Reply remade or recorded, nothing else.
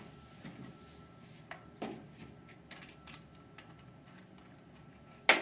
recorded